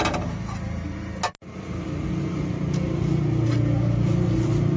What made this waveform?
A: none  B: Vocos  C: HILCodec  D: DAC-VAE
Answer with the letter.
A